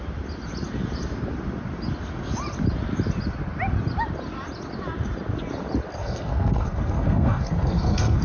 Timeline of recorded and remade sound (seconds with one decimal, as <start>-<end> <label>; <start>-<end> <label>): 0.0-6.0 recorded; 6.0-8.2 remade